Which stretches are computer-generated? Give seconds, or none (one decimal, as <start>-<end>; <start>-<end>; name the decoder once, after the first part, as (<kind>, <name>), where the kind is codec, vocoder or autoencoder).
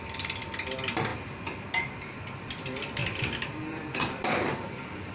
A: 3.0-5.1 (vocoder, BigVGAN v2)